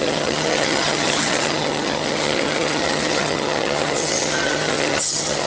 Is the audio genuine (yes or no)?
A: no